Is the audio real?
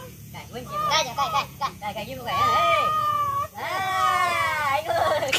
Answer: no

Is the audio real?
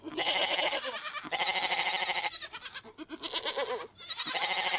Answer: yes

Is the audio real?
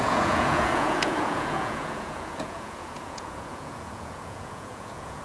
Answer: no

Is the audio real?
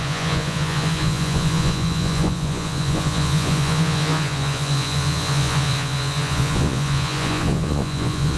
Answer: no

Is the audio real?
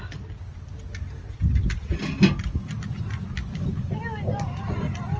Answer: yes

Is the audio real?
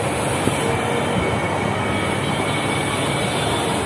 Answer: yes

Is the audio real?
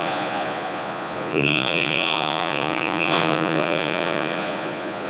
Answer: no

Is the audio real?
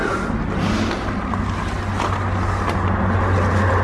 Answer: yes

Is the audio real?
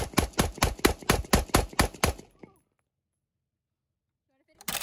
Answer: yes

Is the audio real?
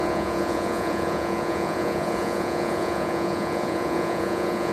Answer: no